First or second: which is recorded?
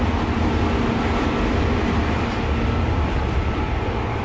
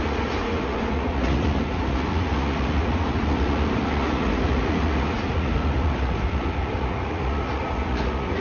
first